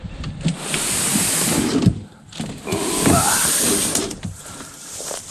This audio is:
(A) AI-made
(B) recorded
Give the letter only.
A